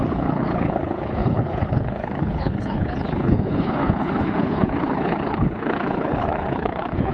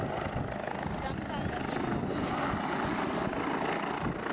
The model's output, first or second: first